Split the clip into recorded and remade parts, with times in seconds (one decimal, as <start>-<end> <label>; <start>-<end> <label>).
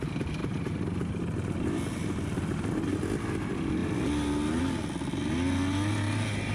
0.0-0.4 recorded; 0.4-1.1 remade; 1.1-6.5 recorded